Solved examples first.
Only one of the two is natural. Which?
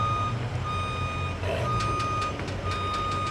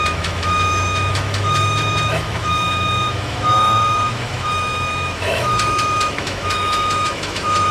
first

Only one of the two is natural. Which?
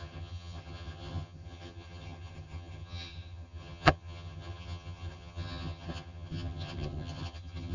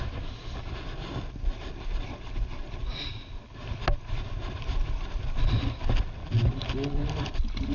second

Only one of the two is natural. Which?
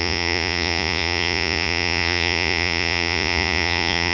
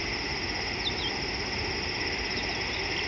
second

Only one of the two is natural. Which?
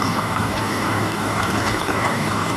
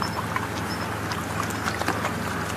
second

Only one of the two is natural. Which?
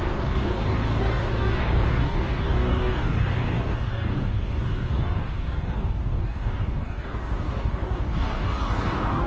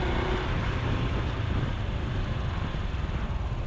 second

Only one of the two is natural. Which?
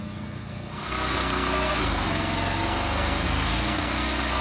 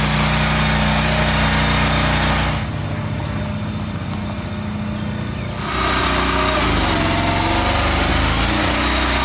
second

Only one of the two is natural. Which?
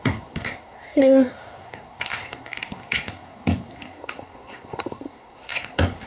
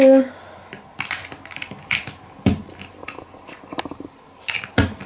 second